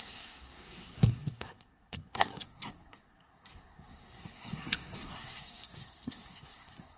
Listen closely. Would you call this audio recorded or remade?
remade